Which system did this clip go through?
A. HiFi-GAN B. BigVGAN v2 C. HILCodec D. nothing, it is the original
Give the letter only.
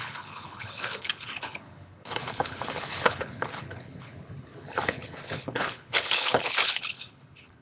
C